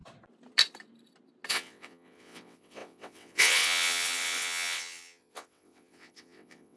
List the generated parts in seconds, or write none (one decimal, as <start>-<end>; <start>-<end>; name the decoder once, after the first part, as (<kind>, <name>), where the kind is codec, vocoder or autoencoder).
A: 1.5-6.8 (vocoder, WaveNeXt)